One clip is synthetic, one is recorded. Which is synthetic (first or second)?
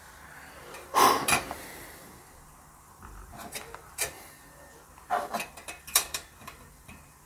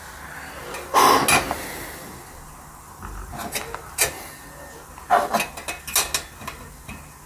first